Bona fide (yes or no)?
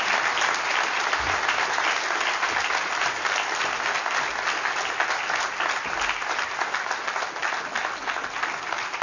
yes